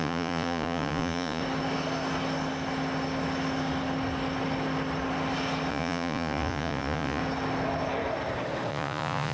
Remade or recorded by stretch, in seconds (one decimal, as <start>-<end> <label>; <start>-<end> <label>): 0.0-1.4 remade; 1.4-5.7 recorded; 5.7-7.2 remade; 7.2-8.7 recorded; 8.7-9.3 remade